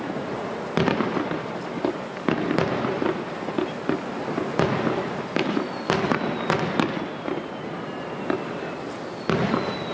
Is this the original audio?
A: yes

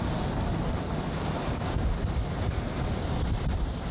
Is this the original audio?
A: yes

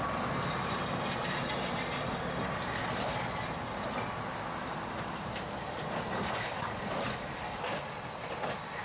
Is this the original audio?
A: yes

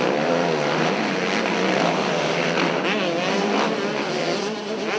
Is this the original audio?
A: yes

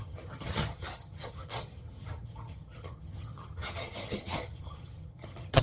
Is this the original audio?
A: no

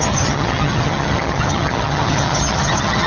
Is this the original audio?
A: no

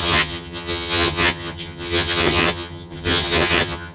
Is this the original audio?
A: no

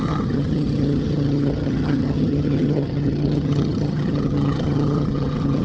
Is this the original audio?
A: no